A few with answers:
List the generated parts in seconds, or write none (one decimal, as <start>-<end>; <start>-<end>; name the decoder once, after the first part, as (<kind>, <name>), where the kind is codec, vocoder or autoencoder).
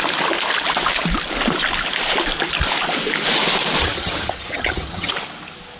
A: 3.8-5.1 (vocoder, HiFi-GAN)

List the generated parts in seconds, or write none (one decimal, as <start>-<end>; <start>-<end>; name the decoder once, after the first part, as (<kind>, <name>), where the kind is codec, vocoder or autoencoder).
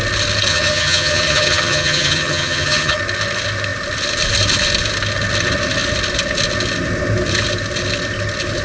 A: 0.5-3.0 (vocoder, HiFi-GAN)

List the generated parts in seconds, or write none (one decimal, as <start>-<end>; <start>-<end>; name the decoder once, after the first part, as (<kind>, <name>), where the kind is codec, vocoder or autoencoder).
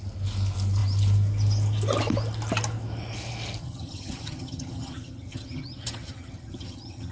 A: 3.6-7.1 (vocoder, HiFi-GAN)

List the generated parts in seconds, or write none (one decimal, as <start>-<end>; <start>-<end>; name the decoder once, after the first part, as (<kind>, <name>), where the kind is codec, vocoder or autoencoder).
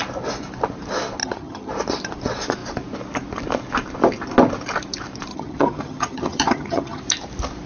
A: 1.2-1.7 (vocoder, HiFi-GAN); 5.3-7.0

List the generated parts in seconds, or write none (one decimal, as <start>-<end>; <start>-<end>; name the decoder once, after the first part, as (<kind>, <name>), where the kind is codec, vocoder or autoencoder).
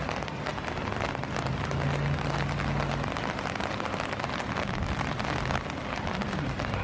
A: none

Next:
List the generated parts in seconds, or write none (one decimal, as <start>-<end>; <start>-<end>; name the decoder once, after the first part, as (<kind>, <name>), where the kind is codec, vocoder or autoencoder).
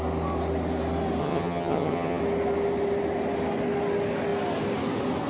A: 1.2-2.2 (vocoder, HiFi-GAN)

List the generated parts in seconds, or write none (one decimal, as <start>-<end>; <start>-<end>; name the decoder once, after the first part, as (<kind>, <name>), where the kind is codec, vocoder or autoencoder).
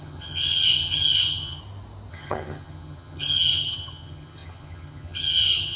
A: 0.0-1.6 (vocoder, HiFi-GAN); 2.1-5.8